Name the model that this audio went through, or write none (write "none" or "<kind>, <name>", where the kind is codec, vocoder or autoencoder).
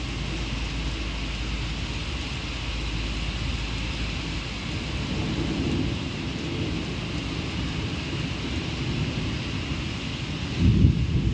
none